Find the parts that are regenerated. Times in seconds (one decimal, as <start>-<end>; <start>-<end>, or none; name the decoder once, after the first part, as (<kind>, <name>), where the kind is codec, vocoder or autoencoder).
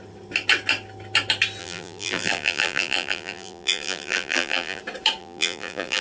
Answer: 1.6-4.8 (vocoder, BigVGAN v2); 5.2-6.0